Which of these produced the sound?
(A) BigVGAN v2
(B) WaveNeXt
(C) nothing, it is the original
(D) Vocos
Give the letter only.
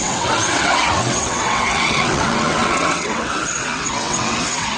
B